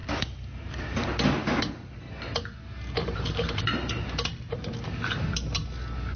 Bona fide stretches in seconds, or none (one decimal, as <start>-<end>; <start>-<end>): 0.8-3.0; 3.6-4.3; 5.3-6.2